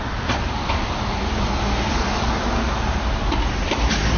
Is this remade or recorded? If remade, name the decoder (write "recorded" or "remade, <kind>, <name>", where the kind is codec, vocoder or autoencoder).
remade, vocoder, BigVGAN v2